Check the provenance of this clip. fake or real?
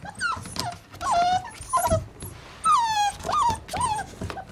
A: real